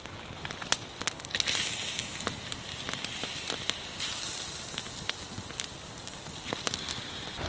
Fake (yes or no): no